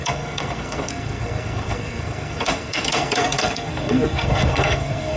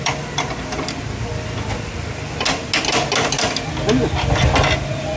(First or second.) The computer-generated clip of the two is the first